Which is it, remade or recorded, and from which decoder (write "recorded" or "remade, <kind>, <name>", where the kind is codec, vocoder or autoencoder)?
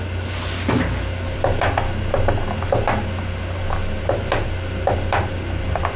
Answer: recorded